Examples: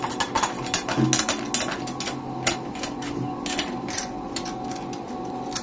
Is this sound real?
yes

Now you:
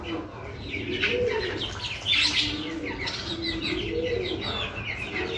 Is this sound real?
yes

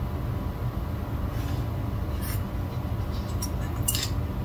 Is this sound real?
yes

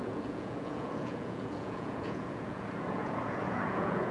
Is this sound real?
no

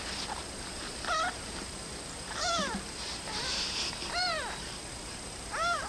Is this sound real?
no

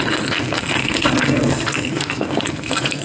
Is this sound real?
no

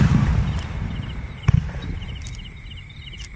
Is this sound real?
no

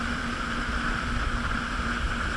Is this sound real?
yes